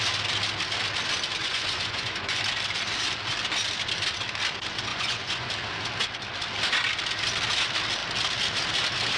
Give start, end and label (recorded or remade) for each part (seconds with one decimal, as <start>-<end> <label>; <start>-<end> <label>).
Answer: 0.0-1.4 recorded; 1.4-2.4 remade; 2.4-4.9 recorded; 4.9-5.5 remade; 5.5-9.2 recorded

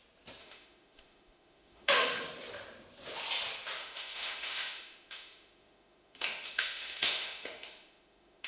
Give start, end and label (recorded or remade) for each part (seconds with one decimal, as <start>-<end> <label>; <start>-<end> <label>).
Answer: 0.0-0.4 recorded; 0.4-2.2 remade; 2.2-3.8 recorded; 3.8-8.5 remade

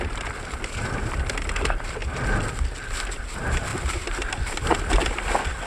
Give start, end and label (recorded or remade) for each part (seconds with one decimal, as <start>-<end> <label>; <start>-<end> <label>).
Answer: 0.0-2.0 remade; 2.0-3.2 recorded; 3.2-5.7 remade